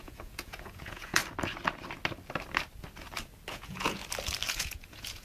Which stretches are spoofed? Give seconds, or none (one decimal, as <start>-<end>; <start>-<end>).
0.0-1.2; 3.5-4.0; 4.5-5.2